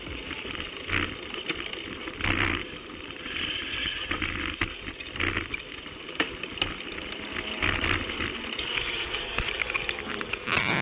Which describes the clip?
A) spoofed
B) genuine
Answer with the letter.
B